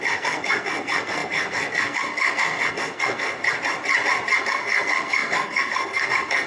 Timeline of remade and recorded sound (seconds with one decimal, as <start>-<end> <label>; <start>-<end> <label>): 0.0-3.4 remade; 3.4-4.4 recorded; 4.4-6.5 remade